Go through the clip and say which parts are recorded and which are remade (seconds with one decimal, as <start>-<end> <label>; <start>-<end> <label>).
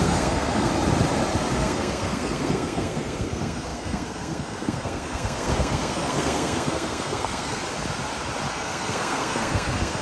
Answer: 0.0-0.7 remade; 0.7-1.5 recorded; 1.5-7.6 remade; 7.6-8.5 recorded; 8.5-10.0 remade